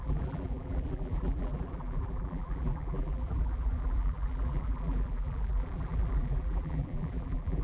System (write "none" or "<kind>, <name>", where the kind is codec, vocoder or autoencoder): vocoder, BigVGAN v2